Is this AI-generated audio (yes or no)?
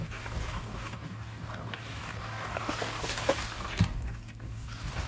yes